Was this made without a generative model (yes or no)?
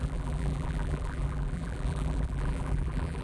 no